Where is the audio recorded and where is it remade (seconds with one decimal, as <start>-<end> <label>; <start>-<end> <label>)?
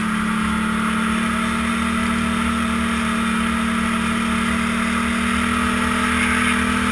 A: 0.0-6.9 recorded